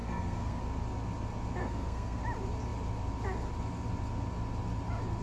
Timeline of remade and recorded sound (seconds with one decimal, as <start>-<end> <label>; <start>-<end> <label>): 0.0-0.6 remade; 0.6-1.6 recorded; 1.6-2.2 remade; 2.2-5.2 recorded